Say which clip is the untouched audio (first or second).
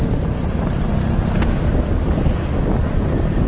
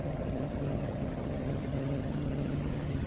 first